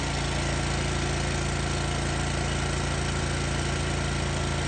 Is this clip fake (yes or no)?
no